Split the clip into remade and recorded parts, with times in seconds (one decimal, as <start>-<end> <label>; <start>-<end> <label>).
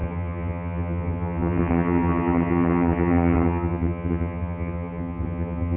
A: 0.0-5.8 remade